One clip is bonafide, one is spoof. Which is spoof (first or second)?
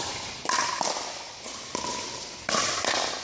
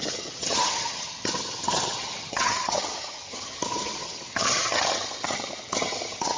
second